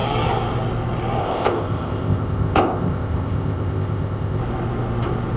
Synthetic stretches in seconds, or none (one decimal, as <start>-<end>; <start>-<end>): 1.2-4.4